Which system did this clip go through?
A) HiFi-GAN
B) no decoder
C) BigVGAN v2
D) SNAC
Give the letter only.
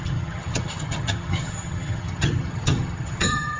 A